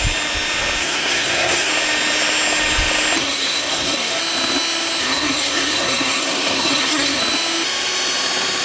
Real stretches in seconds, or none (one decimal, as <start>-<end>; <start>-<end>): 0.0-0.8; 1.7-3.2; 4.2-5.0; 7.2-8.6